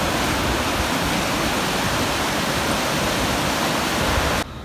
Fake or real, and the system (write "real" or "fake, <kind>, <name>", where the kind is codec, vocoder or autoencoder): real